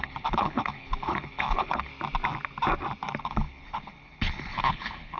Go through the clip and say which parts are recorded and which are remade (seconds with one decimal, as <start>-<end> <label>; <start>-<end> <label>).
0.0-1.9 remade; 1.9-3.2 recorded; 3.2-5.2 remade